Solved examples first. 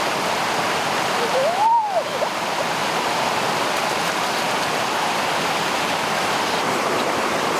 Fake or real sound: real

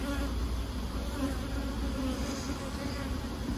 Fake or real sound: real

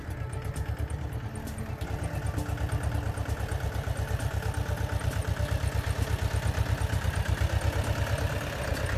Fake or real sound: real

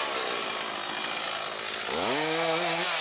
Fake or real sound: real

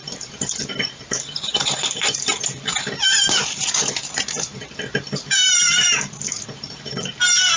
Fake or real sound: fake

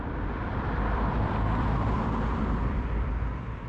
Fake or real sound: fake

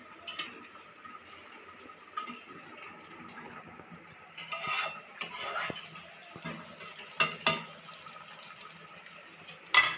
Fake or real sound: real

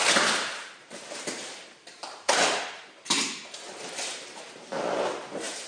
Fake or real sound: fake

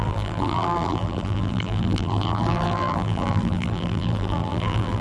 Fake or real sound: fake